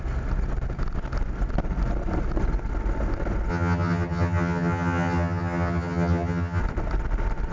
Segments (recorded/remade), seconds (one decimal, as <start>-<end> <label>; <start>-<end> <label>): 0.0-3.5 recorded; 3.5-6.6 remade; 6.6-7.5 recorded